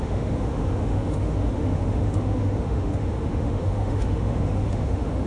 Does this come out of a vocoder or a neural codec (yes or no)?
yes